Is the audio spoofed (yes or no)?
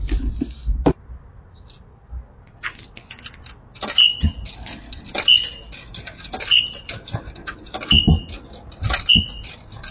no